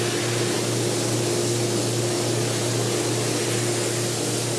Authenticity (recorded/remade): recorded